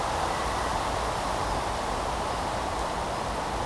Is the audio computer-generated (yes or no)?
no